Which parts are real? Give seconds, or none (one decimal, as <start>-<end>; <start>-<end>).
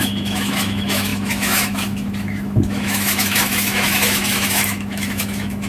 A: none